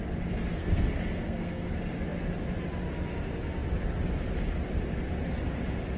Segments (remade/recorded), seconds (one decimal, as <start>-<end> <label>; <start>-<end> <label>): 0.0-0.6 recorded; 0.6-1.7 remade; 1.7-6.0 recorded